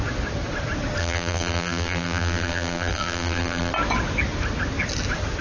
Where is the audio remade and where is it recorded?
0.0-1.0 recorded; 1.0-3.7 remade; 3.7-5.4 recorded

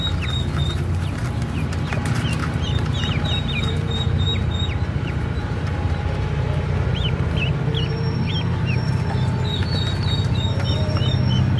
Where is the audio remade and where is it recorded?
0.0-2.4 recorded; 2.4-7.3 remade; 7.3-9.6 recorded; 9.6-10.7 remade; 10.7-11.6 recorded

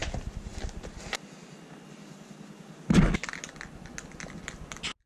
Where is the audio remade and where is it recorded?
0.0-5.1 recorded